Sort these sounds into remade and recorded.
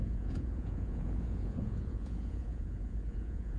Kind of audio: remade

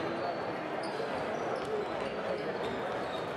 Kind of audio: recorded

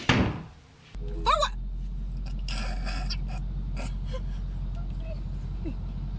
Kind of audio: recorded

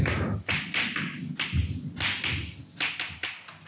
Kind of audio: recorded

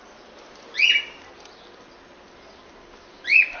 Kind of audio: recorded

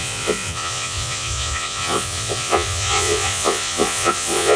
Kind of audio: remade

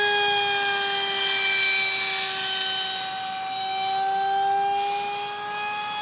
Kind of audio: recorded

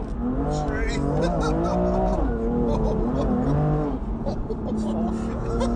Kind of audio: recorded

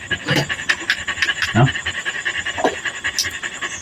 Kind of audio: recorded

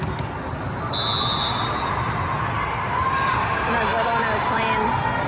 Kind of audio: recorded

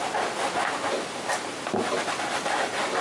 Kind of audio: recorded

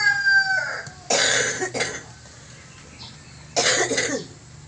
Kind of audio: recorded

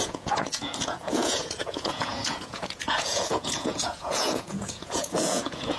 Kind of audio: remade